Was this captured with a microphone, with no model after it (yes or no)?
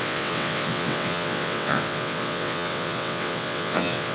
no